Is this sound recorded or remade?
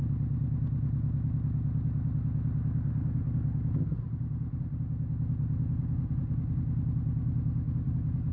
recorded